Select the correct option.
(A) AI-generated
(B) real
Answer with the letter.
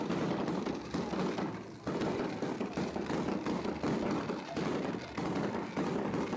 B